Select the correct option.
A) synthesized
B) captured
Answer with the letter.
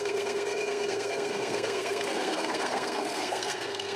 A